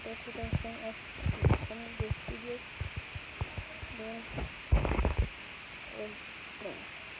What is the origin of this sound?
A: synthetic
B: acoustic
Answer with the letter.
B